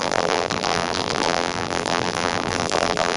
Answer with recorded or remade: remade